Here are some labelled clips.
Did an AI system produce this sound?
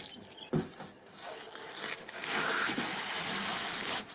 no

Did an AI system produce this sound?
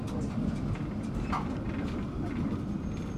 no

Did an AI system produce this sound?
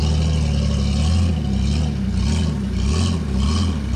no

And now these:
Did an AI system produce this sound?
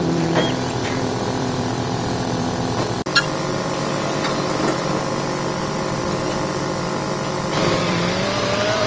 yes